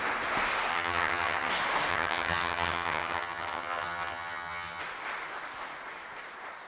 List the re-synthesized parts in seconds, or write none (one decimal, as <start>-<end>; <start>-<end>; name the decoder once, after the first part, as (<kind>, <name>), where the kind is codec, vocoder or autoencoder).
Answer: 0.7-1.5 (vocoder, HiFi-GAN); 1.9-4.8